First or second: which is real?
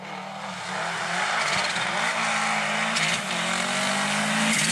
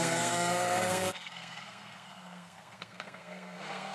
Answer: first